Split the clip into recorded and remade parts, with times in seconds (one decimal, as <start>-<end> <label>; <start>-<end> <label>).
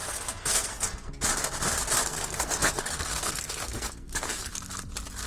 0.0-1.1 remade; 1.1-2.0 recorded; 2.0-4.6 remade; 4.6-5.3 recorded